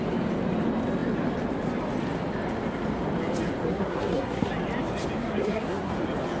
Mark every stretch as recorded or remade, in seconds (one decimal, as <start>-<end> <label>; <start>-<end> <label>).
0.0-3.7 recorded; 3.7-4.5 remade; 4.5-5.2 recorded; 5.2-5.9 remade; 5.9-6.4 recorded